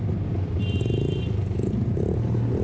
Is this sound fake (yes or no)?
no